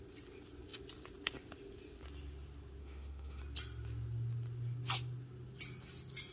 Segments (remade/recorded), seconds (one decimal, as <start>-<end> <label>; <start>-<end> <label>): 0.0-2.8 recorded; 2.8-3.4 remade; 3.4-6.3 recorded